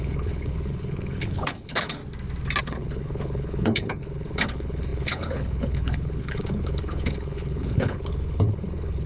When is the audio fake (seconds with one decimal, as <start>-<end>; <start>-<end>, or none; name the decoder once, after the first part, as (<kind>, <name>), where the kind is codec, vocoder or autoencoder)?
0.0-2.0 (codec, HILCodec); 2.6-9.1